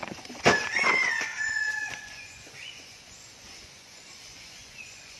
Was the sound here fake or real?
fake